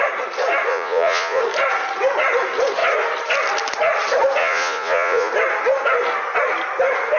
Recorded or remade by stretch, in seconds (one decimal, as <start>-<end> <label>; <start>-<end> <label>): 0.0-0.7 recorded; 0.7-1.4 remade; 1.4-4.4 recorded; 4.4-5.3 remade; 5.3-7.2 recorded